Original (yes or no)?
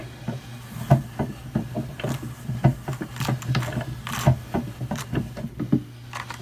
yes